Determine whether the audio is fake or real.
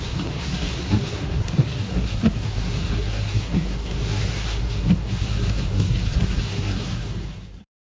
fake